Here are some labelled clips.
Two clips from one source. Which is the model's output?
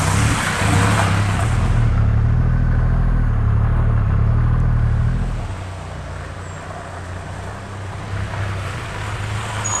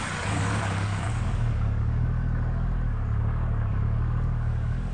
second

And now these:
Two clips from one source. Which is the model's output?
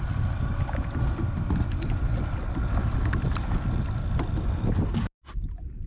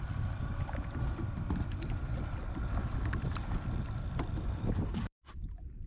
second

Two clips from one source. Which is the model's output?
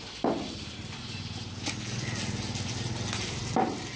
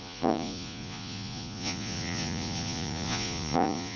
second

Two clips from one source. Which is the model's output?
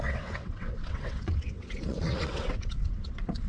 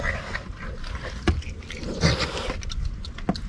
first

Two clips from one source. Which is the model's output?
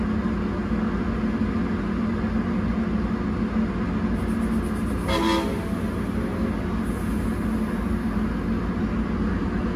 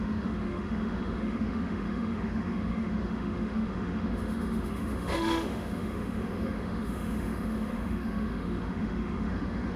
second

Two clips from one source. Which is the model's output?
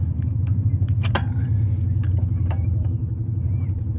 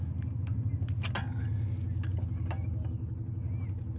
first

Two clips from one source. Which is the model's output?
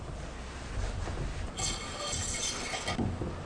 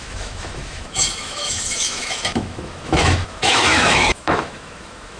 second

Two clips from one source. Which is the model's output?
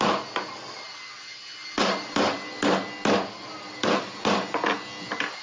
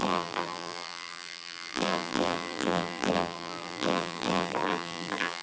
second